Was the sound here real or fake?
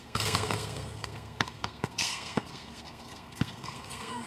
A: fake